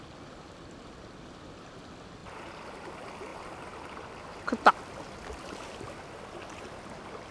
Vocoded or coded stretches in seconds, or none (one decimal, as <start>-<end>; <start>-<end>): 2.2-2.9; 3.3-4.7